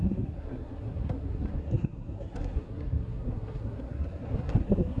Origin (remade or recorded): remade